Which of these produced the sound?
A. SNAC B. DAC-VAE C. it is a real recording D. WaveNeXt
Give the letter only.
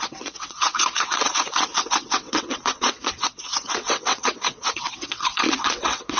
D